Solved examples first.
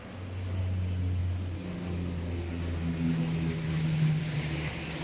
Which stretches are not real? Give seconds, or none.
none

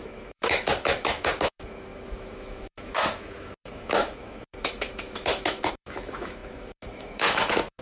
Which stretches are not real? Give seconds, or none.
0.0-7.8 (autoencoder, DAC-VAE)

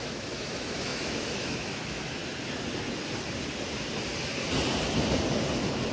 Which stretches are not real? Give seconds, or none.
0.0-2.2 (autoencoder, DAC-VAE)

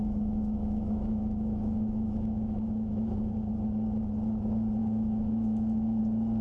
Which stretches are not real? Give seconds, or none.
0.0-3.3 (autoencoder, DAC-VAE); 4.8-6.0

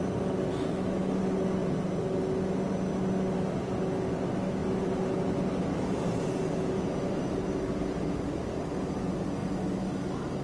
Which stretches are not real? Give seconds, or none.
0.5-1.2 (autoencoder, DAC-VAE)